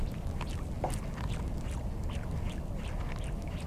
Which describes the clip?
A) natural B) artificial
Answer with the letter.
A